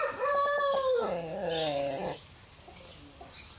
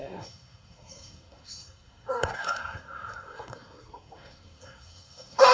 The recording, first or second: first